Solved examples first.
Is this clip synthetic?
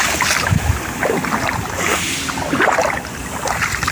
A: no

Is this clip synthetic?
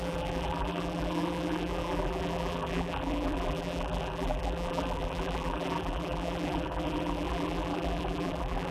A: yes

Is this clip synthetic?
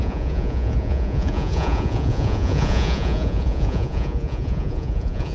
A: yes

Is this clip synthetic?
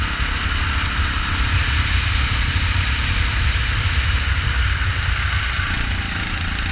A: no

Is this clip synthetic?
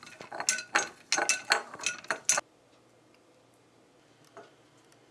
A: no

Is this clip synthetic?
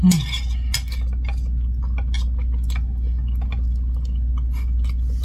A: no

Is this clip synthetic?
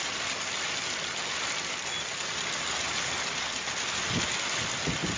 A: no